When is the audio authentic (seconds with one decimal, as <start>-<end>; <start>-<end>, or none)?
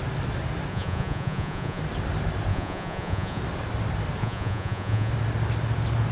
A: 0.0-0.7; 1.8-2.5; 3.4-4.2; 5.1-6.1